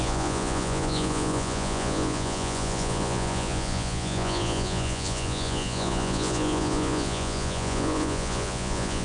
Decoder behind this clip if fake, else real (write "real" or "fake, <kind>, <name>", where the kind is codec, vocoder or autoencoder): fake, vocoder, Vocos